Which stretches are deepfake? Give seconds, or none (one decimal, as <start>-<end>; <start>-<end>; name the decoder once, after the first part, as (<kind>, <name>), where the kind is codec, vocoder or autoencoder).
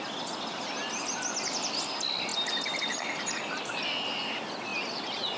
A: none